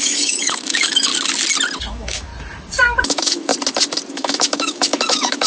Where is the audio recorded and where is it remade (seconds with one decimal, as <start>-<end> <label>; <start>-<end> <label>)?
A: 0.0-1.1 remade; 1.1-1.9 recorded; 1.9-2.3 remade; 2.3-3.0 recorded; 3.0-3.5 remade; 3.5-4.1 recorded; 4.1-5.5 remade